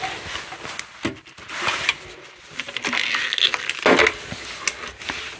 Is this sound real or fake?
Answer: real